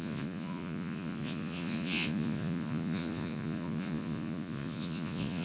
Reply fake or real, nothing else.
fake